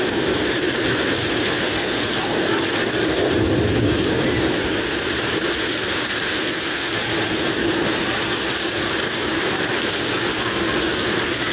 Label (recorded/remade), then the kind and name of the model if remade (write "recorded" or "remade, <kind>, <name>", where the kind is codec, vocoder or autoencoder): recorded